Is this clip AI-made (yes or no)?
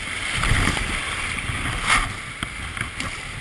no